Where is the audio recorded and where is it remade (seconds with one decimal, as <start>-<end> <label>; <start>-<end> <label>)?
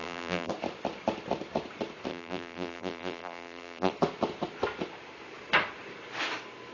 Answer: 0.0-0.5 remade; 0.5-2.1 recorded; 2.1-3.9 remade; 3.9-6.7 recorded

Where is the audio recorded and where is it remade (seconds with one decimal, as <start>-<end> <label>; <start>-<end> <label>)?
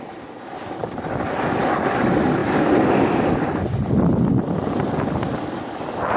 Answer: 0.0-0.8 recorded; 0.8-1.6 remade; 1.6-6.2 recorded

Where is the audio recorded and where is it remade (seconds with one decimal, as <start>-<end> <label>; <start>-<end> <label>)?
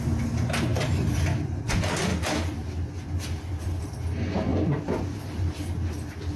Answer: 0.0-0.7 recorded; 0.7-1.6 remade; 1.6-2.1 recorded; 2.1-3.8 remade; 3.8-4.5 recorded; 4.5-5.5 remade; 5.5-6.4 recorded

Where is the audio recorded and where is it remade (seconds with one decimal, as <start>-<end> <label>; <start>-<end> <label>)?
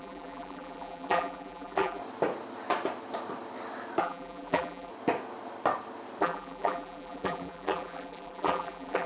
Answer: 0.0-2.0 remade; 2.0-4.0 recorded; 4.0-4.9 remade; 4.9-6.2 recorded; 6.2-9.1 remade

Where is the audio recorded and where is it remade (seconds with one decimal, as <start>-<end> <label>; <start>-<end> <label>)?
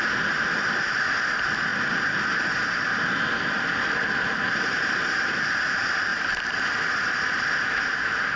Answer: 0.0-6.1 recorded; 6.1-7.9 remade; 7.9-8.4 recorded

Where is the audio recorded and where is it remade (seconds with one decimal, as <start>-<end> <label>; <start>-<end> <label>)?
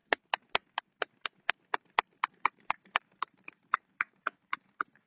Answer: 0.0-2.3 recorded; 2.3-5.1 remade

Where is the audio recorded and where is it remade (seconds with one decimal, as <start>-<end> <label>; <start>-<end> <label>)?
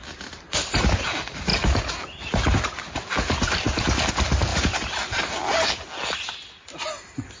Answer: 0.0-7.4 recorded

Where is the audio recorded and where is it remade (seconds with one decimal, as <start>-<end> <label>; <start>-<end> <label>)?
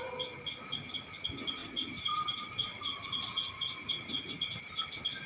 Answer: 0.0-1.6 recorded; 1.6-4.8 remade; 4.8-5.3 recorded